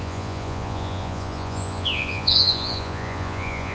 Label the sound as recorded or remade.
remade